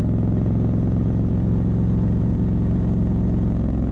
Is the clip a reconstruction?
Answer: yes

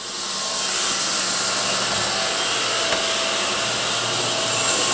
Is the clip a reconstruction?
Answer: no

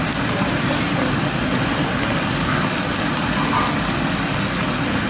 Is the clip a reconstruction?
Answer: no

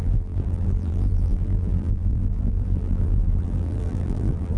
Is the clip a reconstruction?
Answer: yes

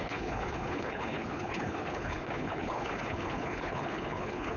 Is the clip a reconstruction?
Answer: yes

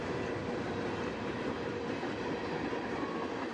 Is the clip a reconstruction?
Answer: no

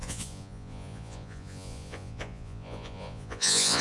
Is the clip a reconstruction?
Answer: yes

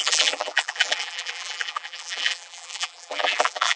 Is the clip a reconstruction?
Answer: yes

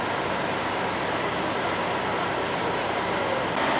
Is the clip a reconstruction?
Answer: no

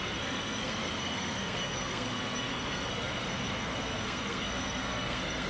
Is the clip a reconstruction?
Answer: yes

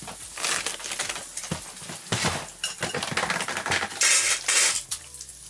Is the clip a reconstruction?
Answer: no